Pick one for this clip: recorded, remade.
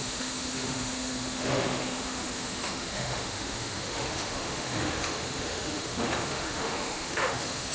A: remade